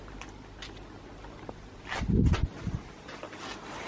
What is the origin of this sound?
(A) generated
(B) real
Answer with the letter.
B